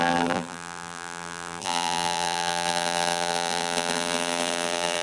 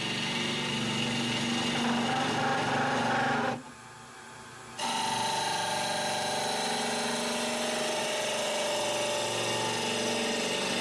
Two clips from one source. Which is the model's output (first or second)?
first